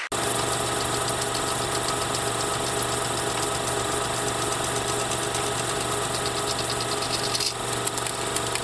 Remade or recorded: recorded